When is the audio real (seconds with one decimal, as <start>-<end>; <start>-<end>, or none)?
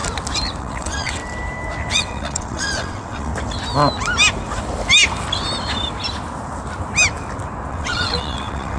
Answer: 0.0-0.6; 1.2-1.9; 3.3-7.7